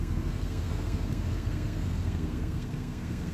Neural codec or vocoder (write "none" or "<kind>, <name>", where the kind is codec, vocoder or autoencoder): codec, SNAC